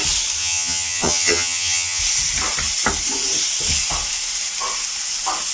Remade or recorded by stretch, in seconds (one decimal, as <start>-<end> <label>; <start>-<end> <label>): 0.0-0.4 recorded; 0.4-2.0 remade; 2.0-5.5 recorded